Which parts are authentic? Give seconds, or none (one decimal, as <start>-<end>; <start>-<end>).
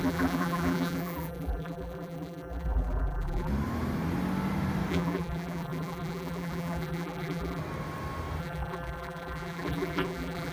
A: 3.5-4.9; 7.6-8.4